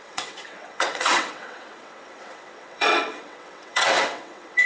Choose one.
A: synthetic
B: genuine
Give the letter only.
A